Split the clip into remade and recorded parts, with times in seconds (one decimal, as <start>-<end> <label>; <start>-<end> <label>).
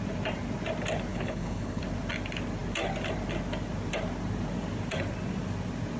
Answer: 0.0-1.1 recorded; 1.1-1.8 remade; 1.8-6.0 recorded